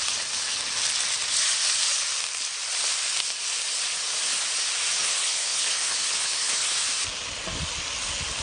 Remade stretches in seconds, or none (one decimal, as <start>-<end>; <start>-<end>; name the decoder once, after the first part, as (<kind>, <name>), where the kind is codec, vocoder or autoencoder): 5.0-6.7 (codec, HILCodec)